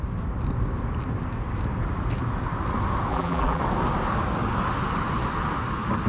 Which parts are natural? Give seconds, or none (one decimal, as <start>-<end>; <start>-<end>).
0.0-3.1; 3.6-6.1